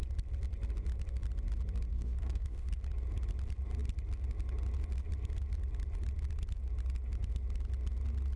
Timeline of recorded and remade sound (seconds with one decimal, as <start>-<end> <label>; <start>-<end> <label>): 0.0-1.9 recorded; 1.9-2.7 remade; 2.7-8.4 recorded